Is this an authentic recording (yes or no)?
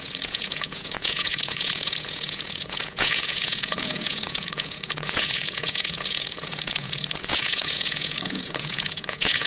no